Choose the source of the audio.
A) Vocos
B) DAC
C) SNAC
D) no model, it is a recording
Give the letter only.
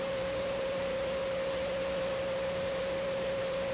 D